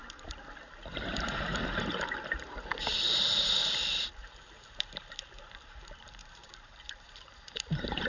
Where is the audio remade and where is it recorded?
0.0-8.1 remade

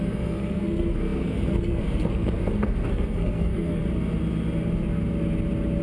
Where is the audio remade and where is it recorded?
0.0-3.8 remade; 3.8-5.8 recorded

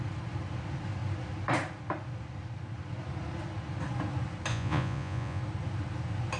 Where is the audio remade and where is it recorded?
0.0-4.5 recorded; 4.5-5.4 remade; 5.4-6.4 recorded